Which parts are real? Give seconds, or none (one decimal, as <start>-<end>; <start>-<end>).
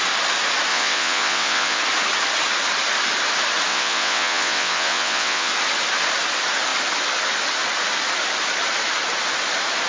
0.0-0.7; 1.8-3.7; 5.5-9.9